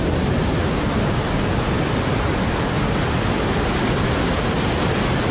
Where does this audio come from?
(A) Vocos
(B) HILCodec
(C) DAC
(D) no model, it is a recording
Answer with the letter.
D